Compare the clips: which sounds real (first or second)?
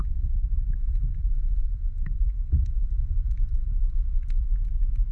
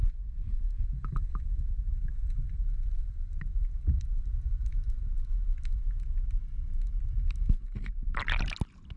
second